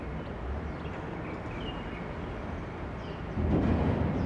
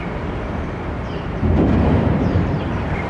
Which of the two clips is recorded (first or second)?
first